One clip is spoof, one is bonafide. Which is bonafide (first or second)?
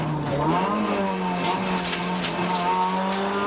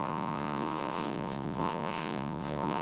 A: first